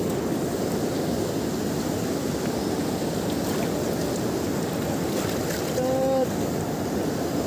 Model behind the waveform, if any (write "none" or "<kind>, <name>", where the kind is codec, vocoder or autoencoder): none